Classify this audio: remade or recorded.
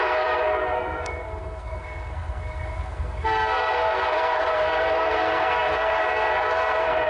remade